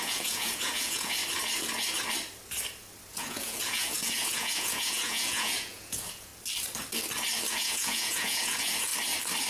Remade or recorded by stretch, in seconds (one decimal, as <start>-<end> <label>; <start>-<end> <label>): 0.0-1.2 remade; 1.2-3.1 recorded; 3.1-6.3 remade; 6.3-7.5 recorded; 7.5-8.9 remade; 8.9-9.5 recorded